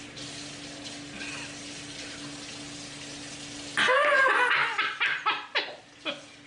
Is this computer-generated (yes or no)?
no